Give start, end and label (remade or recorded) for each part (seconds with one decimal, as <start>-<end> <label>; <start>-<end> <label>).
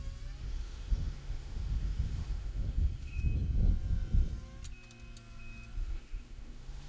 0.0-0.4 recorded; 0.4-3.2 remade; 3.2-5.8 recorded; 5.8-6.9 remade